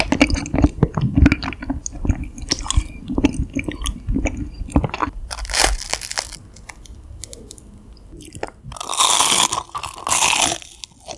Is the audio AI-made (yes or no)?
no